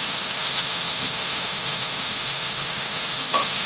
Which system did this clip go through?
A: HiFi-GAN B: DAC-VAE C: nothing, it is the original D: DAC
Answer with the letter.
B